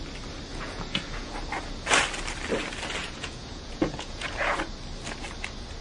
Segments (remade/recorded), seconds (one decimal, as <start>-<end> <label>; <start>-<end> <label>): 0.0-0.5 recorded; 0.5-1.3 remade; 1.3-3.0 recorded; 3.0-4.6 remade; 4.6-5.8 recorded